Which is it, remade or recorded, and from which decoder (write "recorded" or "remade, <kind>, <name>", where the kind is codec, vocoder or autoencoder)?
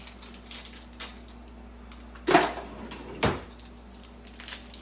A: recorded